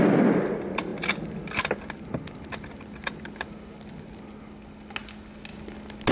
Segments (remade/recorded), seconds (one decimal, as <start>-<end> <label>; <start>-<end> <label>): 0.0-6.1 recorded